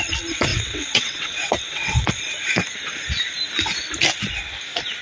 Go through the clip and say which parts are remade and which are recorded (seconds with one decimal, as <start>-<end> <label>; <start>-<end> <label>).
0.0-0.5 recorded; 0.5-2.1 remade; 2.1-5.0 recorded